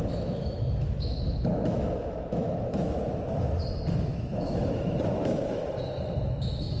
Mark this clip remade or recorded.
remade